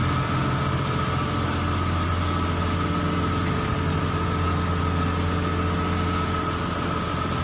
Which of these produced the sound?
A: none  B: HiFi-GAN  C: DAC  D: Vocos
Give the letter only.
A